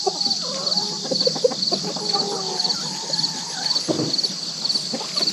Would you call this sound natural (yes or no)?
yes